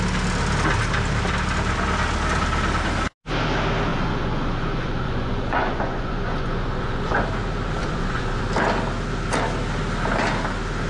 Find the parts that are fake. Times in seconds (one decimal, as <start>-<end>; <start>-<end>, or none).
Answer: 3.9-7.2; 7.8-8.4